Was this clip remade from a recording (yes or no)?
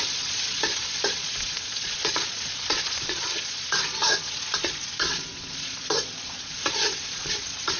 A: yes